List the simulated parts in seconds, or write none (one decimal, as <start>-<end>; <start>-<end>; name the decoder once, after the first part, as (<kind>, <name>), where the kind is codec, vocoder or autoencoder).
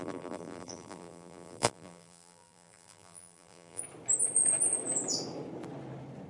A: 0.0-3.8 (vocoder, BigVGAN v2)